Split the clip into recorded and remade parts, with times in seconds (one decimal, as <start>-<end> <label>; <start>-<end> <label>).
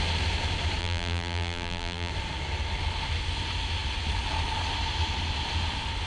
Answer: 0.0-0.8 recorded; 0.8-2.1 remade; 2.1-6.1 recorded